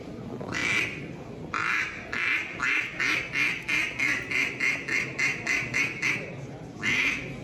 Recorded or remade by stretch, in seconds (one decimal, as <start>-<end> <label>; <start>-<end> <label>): 0.0-7.4 recorded